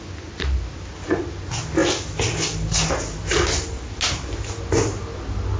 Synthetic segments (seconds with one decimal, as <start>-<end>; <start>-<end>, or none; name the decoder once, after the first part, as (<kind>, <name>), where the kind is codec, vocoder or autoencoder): none